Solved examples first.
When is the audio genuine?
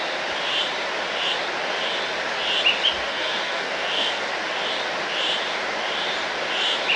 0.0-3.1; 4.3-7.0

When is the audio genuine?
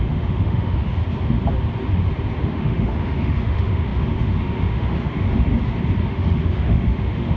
1.0-2.4; 5.5-6.1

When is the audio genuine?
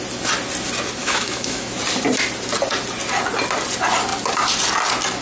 0.0-1.0; 1.8-5.2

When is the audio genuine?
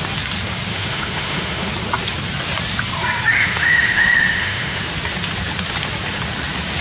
0.0-0.7; 1.7-3.3; 4.8-6.8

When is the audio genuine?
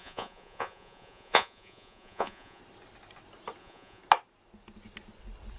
2.6-3.6; 4.0-5.6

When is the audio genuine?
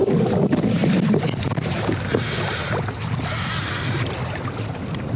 0.8-1.4; 2.1-4.2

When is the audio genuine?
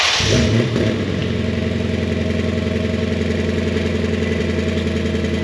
0.0-5.4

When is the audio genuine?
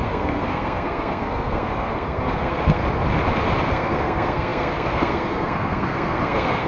2.8-3.7